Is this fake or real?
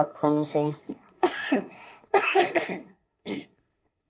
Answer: fake